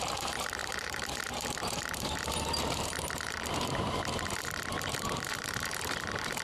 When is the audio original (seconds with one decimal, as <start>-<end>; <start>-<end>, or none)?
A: none